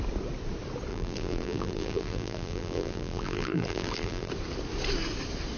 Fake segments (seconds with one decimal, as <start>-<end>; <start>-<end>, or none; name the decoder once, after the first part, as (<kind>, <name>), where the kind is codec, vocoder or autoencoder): 0.9-4.3 (vocoder, BigVGAN v2)